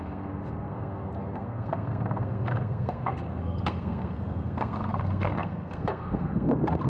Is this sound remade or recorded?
remade